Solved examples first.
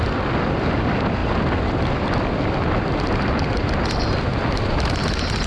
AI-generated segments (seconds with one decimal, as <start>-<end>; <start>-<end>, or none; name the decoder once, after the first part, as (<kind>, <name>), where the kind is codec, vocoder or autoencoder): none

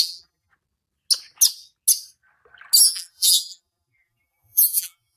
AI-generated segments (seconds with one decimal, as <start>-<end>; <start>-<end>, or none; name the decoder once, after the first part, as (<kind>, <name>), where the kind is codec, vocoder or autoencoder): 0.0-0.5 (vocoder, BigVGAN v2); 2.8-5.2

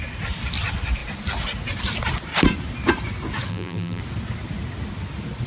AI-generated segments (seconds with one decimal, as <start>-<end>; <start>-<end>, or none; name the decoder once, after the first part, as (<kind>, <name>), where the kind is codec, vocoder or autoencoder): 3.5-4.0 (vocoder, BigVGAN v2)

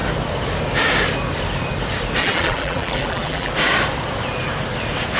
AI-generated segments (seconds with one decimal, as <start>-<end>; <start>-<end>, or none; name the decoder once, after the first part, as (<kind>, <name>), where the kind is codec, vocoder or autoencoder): 2.2-3.5 (vocoder, BigVGAN v2)

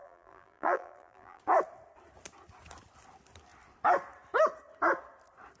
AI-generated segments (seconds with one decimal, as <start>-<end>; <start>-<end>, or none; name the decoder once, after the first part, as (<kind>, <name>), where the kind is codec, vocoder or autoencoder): 0.0-1.4 (vocoder, BigVGAN v2)

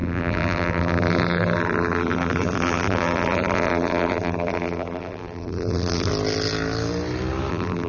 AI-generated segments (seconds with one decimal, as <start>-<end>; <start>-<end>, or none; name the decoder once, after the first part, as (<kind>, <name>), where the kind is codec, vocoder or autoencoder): 0.0-6.1 (vocoder, BigVGAN v2); 7.5-7.9

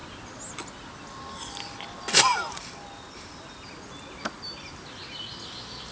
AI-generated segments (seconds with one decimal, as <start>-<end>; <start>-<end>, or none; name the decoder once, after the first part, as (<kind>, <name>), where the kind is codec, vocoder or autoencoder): 2.3-3.9 (vocoder, BigVGAN v2)

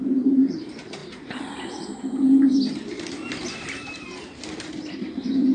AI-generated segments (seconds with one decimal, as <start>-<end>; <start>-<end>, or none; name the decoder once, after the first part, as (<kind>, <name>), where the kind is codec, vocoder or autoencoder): 0.0-1.0 (vocoder, BigVGAN v2); 3.6-5.5